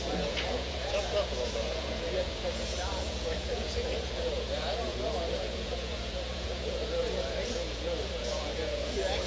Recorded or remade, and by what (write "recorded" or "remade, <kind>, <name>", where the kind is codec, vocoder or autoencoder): remade, vocoder, Vocos